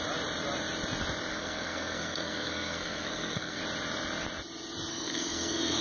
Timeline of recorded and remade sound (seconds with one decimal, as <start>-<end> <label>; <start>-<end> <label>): 0.0-1.3 recorded; 1.3-3.6 remade; 3.6-4.9 recorded; 4.9-5.8 remade